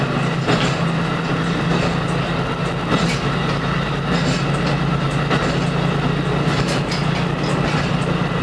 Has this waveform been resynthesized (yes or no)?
no